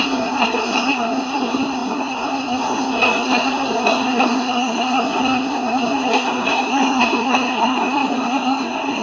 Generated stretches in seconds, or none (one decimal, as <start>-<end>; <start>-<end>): 0.0-9.0

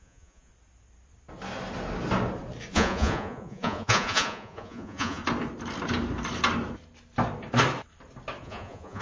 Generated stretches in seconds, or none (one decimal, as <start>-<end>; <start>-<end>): 0.0-0.5; 2.7-5.2; 8.4-9.0

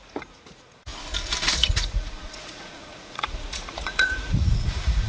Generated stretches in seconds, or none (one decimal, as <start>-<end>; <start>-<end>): 0.0-0.9; 1.6-5.1

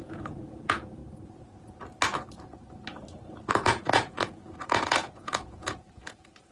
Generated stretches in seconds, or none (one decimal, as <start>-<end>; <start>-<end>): 0.0-1.0; 3.5-6.5

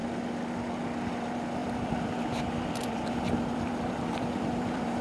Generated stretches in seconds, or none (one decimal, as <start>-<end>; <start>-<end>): 1.1-5.0

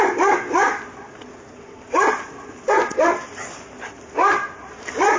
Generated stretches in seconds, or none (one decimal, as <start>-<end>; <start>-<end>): none

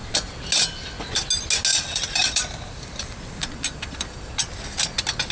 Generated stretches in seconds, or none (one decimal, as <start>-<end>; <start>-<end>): 1.7-4.3